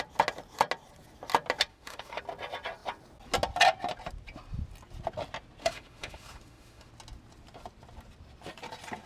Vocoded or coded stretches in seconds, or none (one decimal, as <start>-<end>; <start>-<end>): 1.7-2.2; 5.6-6.9